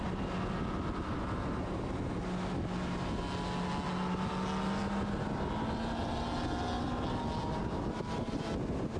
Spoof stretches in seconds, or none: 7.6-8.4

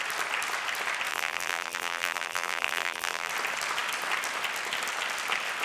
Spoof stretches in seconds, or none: 1.1-3.3

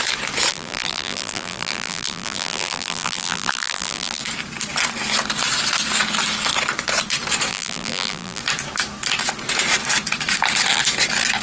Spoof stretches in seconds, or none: 0.5-4.2; 7.5-8.4